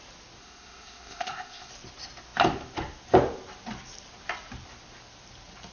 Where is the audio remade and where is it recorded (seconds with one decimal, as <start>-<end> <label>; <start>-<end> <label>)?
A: 0.0-0.4 recorded; 0.4-1.7 remade; 1.7-5.7 recorded

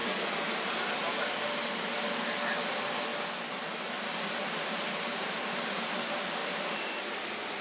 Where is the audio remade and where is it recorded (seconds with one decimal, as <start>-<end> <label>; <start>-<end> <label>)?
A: 0.0-4.4 recorded; 4.4-6.0 remade; 6.0-6.4 recorded; 6.4-7.0 remade; 7.0-7.6 recorded

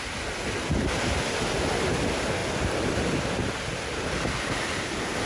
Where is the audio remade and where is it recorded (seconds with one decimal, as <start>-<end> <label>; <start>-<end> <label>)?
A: 0.0-5.3 recorded

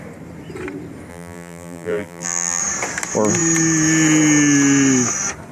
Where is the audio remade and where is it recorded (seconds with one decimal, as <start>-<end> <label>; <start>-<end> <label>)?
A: 0.0-1.1 recorded; 1.1-2.6 remade; 2.6-5.5 recorded

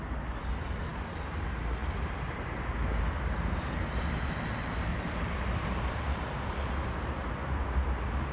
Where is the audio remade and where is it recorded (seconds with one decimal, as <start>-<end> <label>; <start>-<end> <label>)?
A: 0.0-0.9 recorded; 0.9-1.4 remade; 1.4-1.8 recorded; 1.8-3.0 remade; 3.0-4.9 recorded; 4.9-6.2 remade; 6.2-8.3 recorded

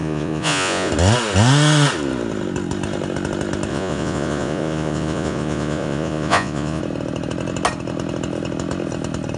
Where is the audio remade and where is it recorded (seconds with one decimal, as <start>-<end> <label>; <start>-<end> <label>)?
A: 0.0-0.9 remade; 0.9-3.7 recorded; 3.7-6.8 remade; 6.8-9.4 recorded